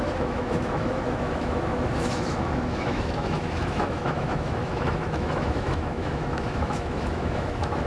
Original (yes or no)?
no